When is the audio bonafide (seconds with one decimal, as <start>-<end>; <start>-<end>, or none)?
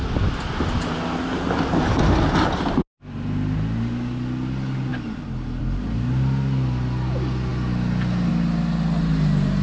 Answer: 0.0-9.6